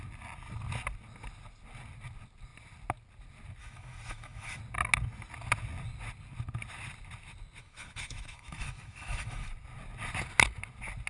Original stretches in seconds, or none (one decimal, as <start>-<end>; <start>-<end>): 0.0-3.6; 4.6-7.6; 9.5-11.1